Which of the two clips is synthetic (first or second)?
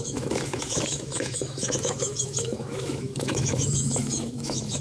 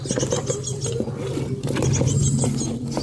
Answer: first